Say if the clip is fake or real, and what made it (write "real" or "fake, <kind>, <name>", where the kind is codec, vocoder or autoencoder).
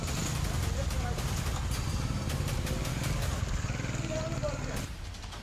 real